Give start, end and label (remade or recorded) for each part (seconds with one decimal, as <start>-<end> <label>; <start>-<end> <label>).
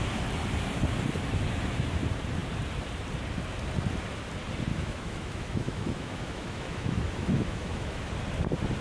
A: 0.0-4.7 recorded; 4.7-8.1 remade; 8.1-8.8 recorded